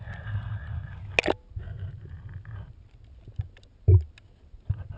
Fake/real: real